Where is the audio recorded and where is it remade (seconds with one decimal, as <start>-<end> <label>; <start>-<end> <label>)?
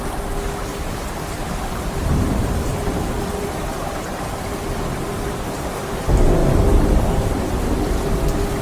0.0-0.7 recorded; 0.7-4.2 remade; 4.2-8.6 recorded